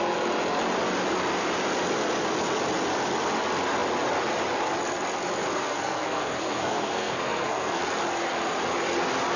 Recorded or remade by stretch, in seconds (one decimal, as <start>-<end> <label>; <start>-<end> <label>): 0.0-5.5 recorded; 5.5-7.8 remade; 7.8-9.4 recorded